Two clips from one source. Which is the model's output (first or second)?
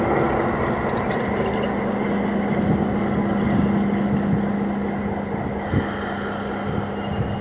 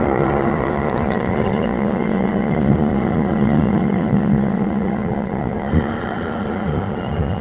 second